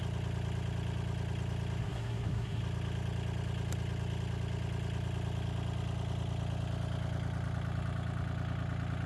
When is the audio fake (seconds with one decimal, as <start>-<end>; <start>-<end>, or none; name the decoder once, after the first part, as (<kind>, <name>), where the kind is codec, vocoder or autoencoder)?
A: 1.8-2.6 (codec, SNAC)